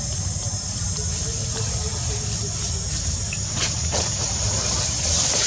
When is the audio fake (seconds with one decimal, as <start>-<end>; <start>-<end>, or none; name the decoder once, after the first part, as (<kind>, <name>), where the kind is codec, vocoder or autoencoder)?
none

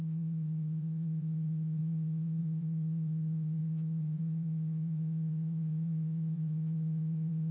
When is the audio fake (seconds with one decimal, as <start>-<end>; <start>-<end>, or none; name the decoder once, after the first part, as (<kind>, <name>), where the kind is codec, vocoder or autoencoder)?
0.0-7.5 (vocoder, WaveNeXt)

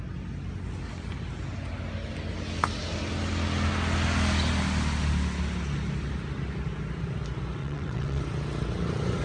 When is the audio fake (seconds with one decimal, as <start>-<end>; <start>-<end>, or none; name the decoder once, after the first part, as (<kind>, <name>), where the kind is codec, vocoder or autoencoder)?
7.6-8.2 (vocoder, WaveNeXt)

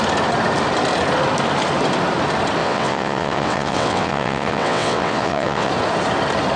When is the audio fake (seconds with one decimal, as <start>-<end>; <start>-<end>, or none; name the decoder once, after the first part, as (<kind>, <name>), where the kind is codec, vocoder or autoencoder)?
2.6-5.7 (vocoder, WaveNeXt)